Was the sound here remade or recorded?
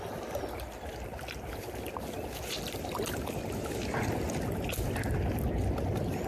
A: recorded